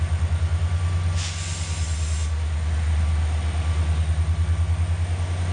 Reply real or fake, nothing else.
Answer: real